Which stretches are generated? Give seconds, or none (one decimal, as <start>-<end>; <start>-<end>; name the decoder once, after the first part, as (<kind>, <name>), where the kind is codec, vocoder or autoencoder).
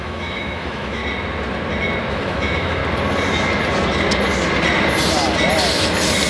0.0-1.0 (autoencoder, DAC-VAE); 2.1-2.8